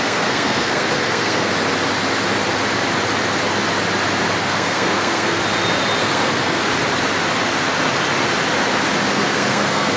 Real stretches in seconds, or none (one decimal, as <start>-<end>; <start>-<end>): 1.5-4.4; 5.4-6.0; 6.6-9.1